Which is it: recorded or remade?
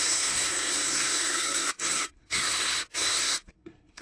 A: remade